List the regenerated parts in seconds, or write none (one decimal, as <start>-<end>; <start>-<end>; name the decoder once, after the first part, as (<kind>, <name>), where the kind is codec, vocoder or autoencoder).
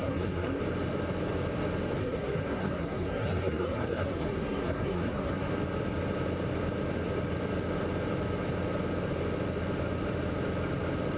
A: 0.0-0.6 (codec, SNAC); 2.0-5.5